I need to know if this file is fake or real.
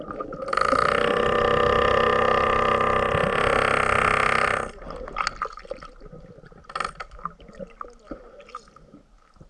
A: real